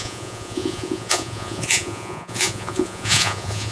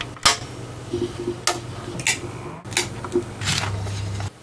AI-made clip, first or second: first